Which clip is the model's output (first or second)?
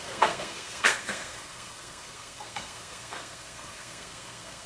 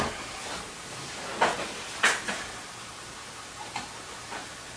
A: first